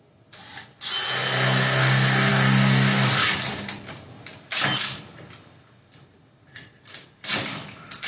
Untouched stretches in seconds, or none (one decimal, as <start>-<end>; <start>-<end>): 0.0-8.1